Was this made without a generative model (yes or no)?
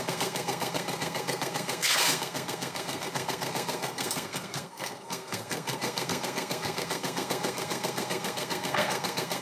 no